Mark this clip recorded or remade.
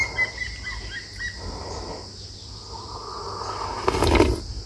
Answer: recorded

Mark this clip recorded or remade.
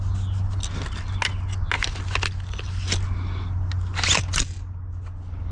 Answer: recorded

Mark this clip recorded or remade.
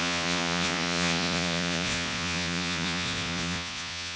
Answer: remade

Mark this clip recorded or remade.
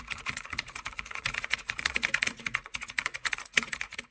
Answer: remade